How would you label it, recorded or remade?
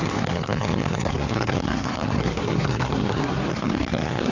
remade